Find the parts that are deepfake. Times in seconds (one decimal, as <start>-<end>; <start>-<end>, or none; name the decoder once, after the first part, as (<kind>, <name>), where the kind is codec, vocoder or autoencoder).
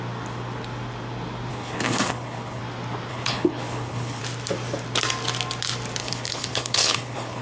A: 1.5-2.6 (codec, HILCodec); 3.1-4.2; 6.0-7.4